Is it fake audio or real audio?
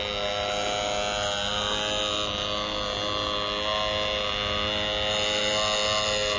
real